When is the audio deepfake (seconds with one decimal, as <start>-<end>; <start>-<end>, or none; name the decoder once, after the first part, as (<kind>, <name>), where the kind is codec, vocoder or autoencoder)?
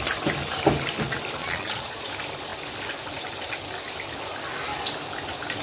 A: 1.4-2.1 (vocoder, Vocos)